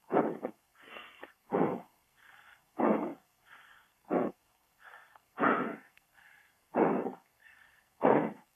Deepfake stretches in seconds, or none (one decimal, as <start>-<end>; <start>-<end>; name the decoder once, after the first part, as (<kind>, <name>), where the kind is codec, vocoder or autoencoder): 0.0-8.6 (codec, SNAC)